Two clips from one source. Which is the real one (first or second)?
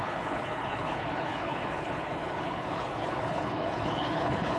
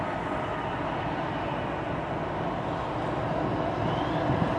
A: second